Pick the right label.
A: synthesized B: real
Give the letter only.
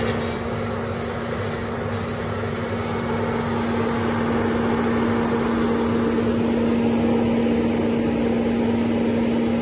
B